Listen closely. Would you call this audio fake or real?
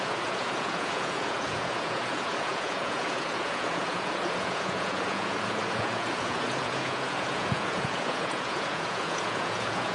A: fake